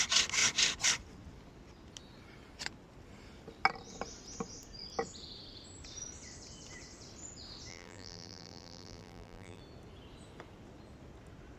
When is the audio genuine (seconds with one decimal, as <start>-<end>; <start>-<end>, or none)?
0.0-7.7; 9.6-11.6